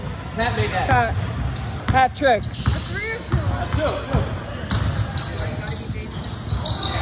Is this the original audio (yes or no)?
yes